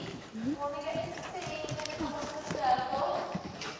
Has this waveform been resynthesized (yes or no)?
no